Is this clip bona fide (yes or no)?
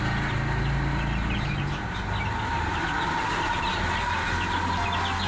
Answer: yes